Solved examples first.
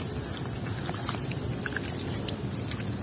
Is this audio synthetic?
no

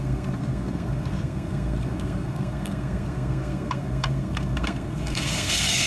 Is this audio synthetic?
yes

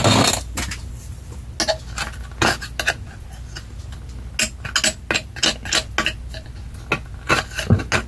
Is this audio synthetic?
no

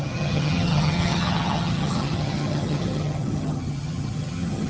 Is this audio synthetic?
yes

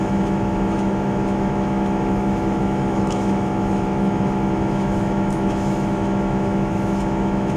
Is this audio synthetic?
yes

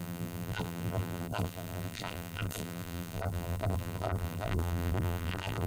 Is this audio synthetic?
yes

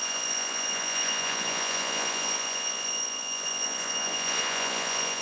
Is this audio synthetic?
yes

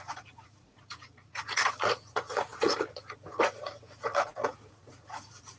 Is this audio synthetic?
yes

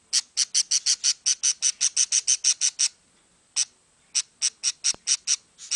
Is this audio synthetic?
no